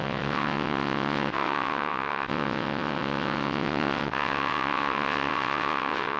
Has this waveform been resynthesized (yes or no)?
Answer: yes